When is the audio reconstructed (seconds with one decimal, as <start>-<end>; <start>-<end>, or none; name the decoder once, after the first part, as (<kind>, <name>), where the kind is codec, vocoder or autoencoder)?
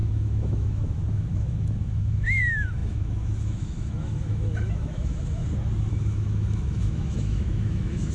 0.0-5.4 (autoencoder, DAC-VAE); 5.9-8.1